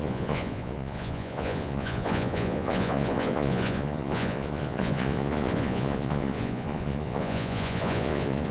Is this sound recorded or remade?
remade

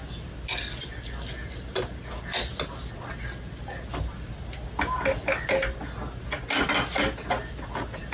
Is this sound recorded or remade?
recorded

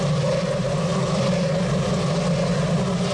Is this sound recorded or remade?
recorded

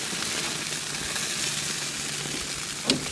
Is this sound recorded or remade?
recorded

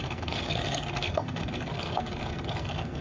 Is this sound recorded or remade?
remade